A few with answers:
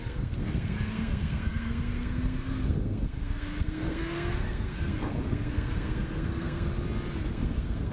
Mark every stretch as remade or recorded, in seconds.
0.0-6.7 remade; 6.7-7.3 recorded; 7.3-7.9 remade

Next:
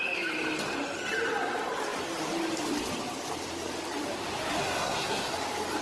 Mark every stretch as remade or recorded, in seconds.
0.0-4.6 recorded; 4.6-5.3 remade; 5.3-5.8 recorded

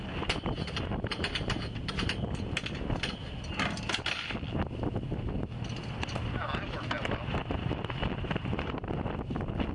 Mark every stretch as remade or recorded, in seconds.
0.0-7.4 recorded; 7.4-8.9 remade; 8.9-9.7 recorded

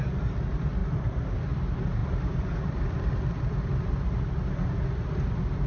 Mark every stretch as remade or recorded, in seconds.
0.0-0.8 recorded; 0.8-1.6 remade; 1.6-2.0 recorded; 2.0-4.2 remade; 4.2-5.7 recorded

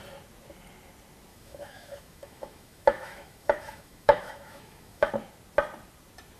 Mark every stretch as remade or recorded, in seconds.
0.0-1.3 recorded; 1.3-5.1 remade; 5.1-6.4 recorded

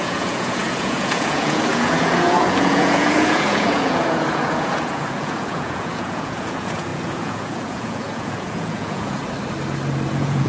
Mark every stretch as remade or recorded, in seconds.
0.0-9.2 remade; 9.2-10.1 recorded; 10.1-10.5 remade